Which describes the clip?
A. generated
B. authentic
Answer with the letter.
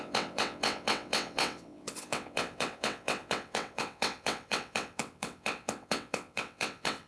A